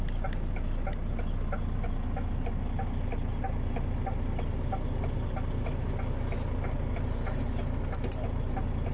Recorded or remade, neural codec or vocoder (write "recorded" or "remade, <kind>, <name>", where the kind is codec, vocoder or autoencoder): recorded